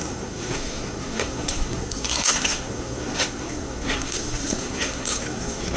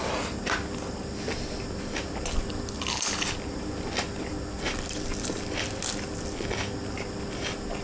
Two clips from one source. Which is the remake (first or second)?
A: first